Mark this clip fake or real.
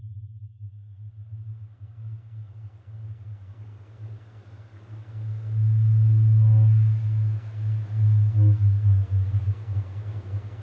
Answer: fake